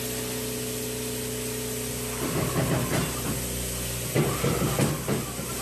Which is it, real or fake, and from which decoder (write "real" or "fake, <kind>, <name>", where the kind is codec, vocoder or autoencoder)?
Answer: real